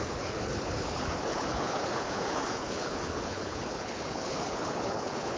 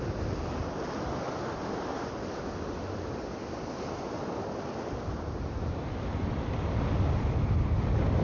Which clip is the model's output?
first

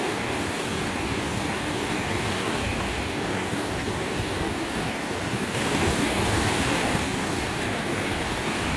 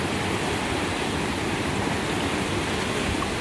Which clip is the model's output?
first